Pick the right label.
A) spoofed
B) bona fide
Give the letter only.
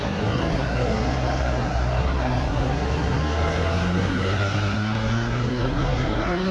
A